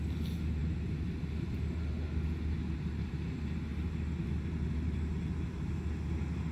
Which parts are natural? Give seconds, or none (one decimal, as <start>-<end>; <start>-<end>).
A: 0.0-0.6; 1.7-6.5